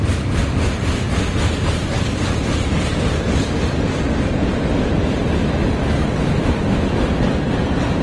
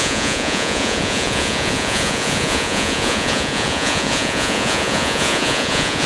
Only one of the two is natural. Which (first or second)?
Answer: first